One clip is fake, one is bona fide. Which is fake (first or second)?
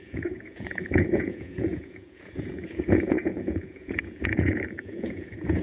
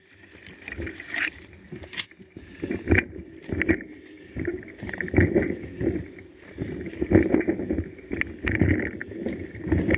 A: first